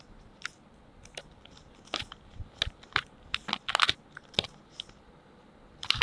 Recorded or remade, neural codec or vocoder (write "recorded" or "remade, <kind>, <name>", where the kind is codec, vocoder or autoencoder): recorded